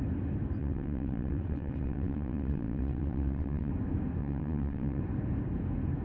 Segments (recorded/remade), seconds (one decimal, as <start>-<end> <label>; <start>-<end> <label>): 0.0-0.6 recorded; 0.6-3.7 remade; 3.7-4.2 recorded; 4.2-5.0 remade; 5.0-6.0 recorded